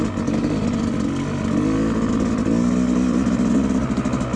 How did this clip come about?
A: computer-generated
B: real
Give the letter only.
B